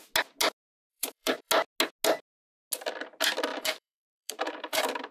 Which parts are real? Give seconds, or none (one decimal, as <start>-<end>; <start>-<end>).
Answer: 0.0-0.9; 1.5-3.5